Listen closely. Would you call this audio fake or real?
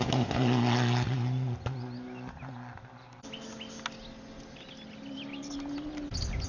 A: real